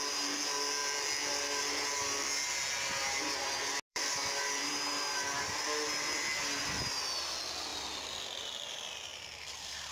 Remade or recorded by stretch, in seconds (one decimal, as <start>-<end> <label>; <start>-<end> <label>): 0.0-3.9 recorded; 3.9-4.7 remade; 4.7-7.7 recorded; 7.7-8.4 remade; 8.4-9.1 recorded; 9.1-9.9 remade